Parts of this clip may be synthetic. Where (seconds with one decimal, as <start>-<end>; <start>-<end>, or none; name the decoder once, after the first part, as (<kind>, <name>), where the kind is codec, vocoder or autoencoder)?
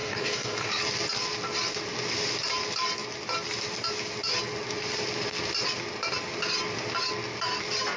0.0-0.7 (codec, DAC)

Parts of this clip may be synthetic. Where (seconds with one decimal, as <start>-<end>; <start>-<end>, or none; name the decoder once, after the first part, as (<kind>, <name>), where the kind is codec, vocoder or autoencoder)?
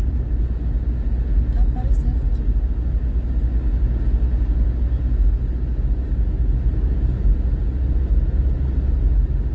none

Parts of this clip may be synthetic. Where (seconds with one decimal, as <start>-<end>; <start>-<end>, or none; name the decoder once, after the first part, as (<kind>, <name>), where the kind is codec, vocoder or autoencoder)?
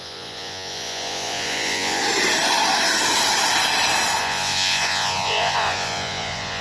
0.0-2.0 (vocoder, Vocos); 4.2-6.6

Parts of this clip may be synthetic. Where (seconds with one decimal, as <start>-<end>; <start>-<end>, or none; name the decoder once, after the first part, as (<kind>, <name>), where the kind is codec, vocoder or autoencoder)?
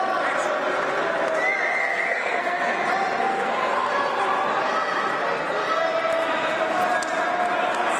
1.8-2.7 (codec, SNAC); 3.2-3.9